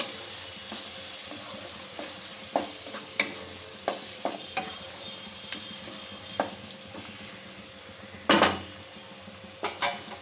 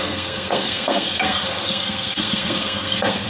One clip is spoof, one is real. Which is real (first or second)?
first